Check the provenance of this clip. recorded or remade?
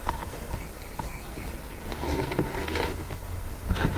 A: remade